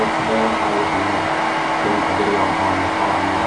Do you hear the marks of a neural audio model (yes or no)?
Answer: no